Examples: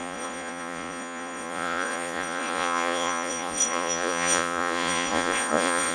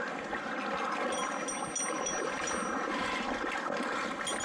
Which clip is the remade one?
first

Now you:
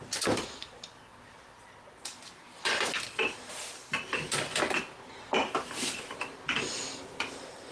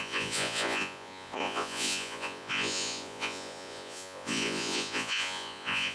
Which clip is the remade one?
second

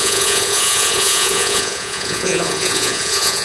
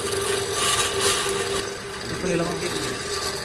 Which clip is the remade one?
first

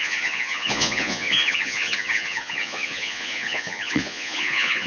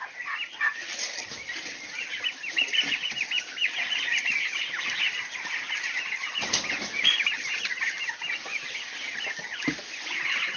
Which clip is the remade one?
first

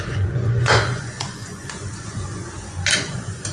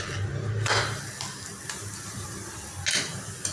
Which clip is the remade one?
first